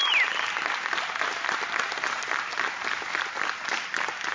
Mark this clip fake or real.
real